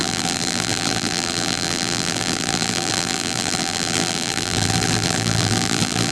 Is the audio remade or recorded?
remade